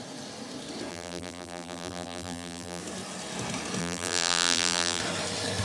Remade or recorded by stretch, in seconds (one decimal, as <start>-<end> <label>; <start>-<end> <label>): 0.0-0.9 recorded; 0.9-2.8 remade; 2.8-3.8 recorded; 3.8-5.0 remade; 5.0-5.6 recorded

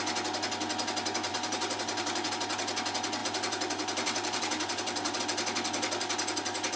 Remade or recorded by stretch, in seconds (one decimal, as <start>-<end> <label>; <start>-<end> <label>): 0.0-1.3 recorded; 1.3-2.3 remade; 2.3-3.2 recorded; 3.2-5.2 remade; 5.2-6.8 recorded

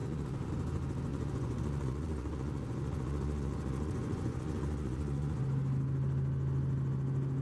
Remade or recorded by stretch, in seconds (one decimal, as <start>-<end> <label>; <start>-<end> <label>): 0.0-0.5 remade; 0.5-1.1 recorded; 1.1-5.4 remade; 5.4-7.4 recorded